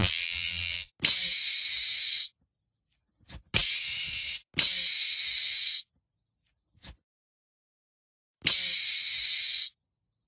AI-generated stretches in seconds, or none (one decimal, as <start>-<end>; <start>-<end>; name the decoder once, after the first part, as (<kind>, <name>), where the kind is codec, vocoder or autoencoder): 0.0-0.9 (vocoder, BigVGAN v2)